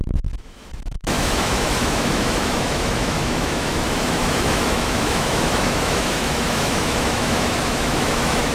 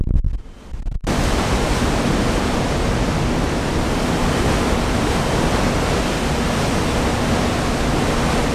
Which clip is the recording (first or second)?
second